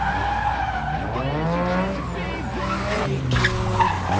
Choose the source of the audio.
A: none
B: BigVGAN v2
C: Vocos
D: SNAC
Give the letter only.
A